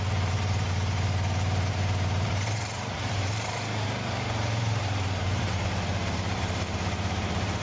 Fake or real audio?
fake